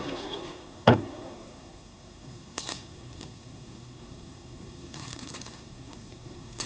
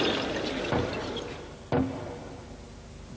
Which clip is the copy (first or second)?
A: first